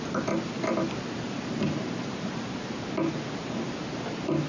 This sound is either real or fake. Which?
real